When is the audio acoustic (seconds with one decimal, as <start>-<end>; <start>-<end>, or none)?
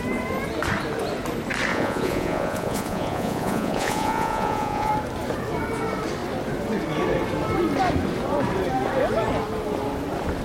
0.0-1.7; 4.9-10.4